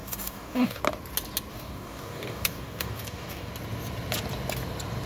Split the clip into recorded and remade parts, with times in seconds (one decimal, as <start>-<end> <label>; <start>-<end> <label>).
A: 0.0-0.8 remade; 0.8-1.5 recorded; 1.5-3.5 remade; 3.5-5.1 recorded